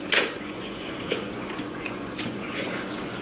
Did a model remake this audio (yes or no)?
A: yes